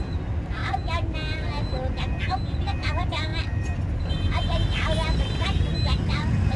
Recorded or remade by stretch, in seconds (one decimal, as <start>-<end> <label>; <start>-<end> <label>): 0.0-6.6 recorded